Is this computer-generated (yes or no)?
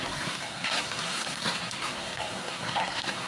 yes